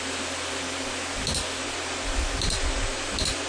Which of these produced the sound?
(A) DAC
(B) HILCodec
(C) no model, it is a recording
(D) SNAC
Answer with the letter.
C